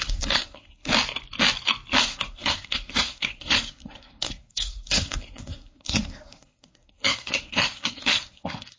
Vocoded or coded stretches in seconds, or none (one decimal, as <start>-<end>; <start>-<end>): 0.0-0.9; 2.0-8.8